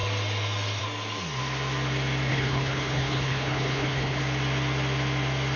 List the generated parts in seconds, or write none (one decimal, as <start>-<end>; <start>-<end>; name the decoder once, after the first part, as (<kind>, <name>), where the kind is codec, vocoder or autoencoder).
2.3-4.2 (codec, HILCodec)